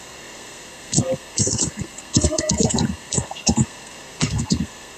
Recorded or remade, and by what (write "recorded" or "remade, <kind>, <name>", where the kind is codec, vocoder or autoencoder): remade, codec, SNAC